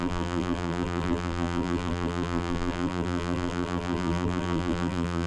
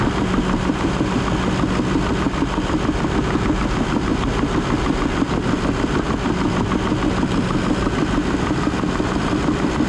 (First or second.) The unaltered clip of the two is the second